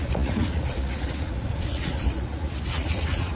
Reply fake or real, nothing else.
fake